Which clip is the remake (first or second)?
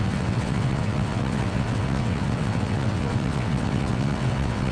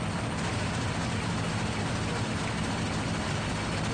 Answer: first